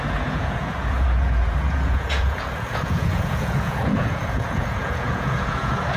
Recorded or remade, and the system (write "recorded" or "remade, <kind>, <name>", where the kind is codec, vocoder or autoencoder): remade, vocoder, Vocos